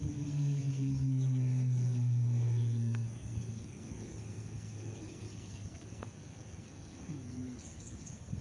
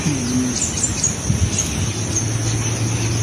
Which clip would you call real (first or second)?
second